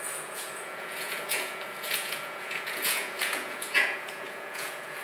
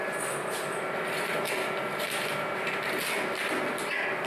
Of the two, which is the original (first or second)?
second